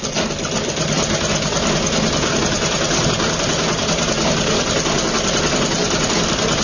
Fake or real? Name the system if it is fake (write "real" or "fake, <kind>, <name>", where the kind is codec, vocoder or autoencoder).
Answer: real